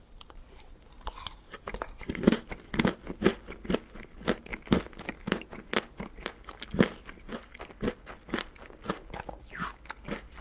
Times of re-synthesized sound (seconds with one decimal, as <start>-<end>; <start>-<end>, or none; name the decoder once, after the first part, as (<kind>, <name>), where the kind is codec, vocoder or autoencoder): none